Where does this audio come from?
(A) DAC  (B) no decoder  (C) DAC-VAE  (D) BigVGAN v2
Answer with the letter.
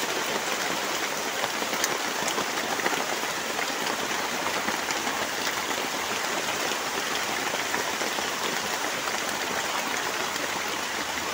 B